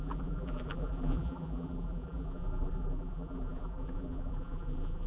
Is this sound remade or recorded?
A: remade